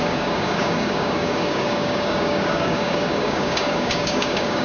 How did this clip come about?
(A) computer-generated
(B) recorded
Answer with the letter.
A